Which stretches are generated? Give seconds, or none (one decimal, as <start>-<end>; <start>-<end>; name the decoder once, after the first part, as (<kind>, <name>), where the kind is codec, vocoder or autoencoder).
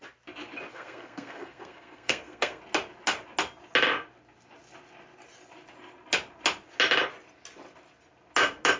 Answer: 0.7-2.6 (codec, SNAC)